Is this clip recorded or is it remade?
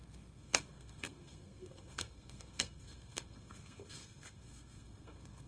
remade